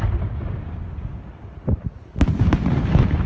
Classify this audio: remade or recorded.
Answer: recorded